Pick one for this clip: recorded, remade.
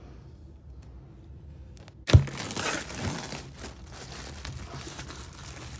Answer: recorded